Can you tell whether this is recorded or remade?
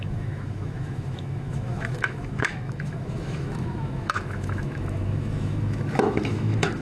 remade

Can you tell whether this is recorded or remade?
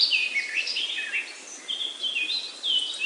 recorded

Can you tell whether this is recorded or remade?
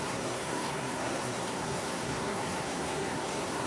remade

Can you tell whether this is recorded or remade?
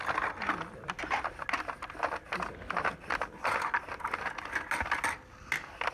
recorded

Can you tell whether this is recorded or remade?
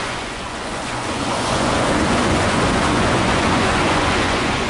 remade